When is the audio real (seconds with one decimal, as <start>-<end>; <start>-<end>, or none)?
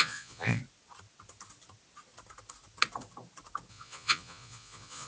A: 0.6-3.7